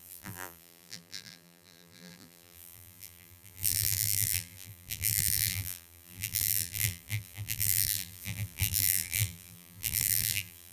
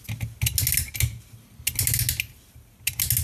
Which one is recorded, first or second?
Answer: second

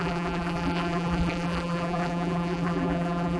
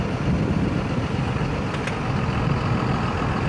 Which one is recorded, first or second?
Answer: second